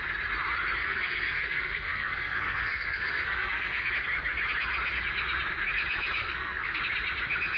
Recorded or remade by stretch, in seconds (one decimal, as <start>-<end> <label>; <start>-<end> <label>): 0.0-0.8 recorded; 0.8-3.9 remade; 3.9-6.2 recorded; 6.2-6.8 remade; 6.8-7.6 recorded